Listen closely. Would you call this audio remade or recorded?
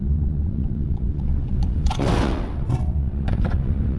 remade